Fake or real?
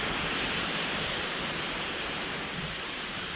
fake